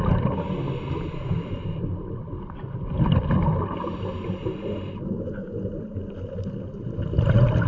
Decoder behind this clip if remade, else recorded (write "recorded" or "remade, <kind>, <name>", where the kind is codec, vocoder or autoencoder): recorded